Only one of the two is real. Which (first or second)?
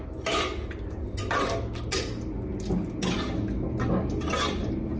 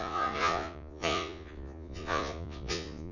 first